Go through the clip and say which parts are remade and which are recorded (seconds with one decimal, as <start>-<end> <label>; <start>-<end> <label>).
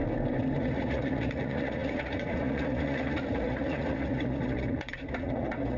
0.0-0.6 recorded; 0.6-5.8 remade